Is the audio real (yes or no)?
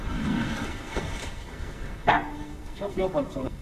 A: no